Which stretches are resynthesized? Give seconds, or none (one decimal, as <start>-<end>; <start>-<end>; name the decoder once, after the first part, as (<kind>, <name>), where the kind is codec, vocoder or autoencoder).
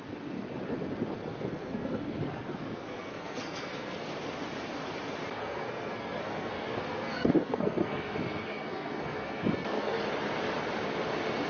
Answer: 1.3-4.1 (codec, SNAC); 5.4-10.0